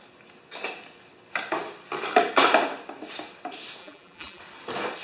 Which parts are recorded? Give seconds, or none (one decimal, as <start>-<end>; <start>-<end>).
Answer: 0.0-3.8; 4.4-5.0